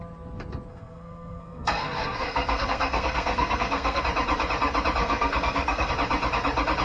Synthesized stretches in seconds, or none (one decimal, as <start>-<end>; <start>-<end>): 0.7-4.0; 5.0-5.9